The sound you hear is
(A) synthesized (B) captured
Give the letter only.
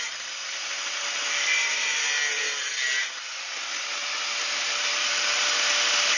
B